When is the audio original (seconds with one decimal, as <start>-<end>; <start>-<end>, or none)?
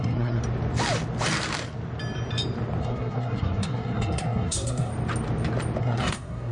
0.4-2.8; 4.9-5.8